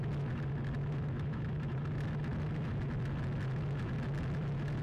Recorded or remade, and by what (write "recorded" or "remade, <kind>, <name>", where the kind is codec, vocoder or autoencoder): recorded